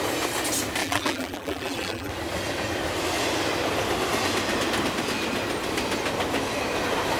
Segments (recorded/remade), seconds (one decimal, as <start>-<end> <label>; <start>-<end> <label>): 0.0-0.8 recorded; 0.8-2.1 remade; 2.1-7.2 recorded